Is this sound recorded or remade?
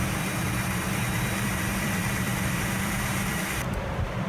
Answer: remade